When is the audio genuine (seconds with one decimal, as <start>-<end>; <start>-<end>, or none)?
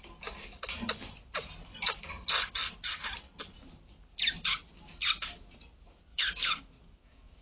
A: 0.0-6.1